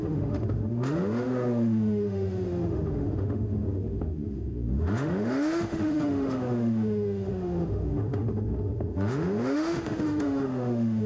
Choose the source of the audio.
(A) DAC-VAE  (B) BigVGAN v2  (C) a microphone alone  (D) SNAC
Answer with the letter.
A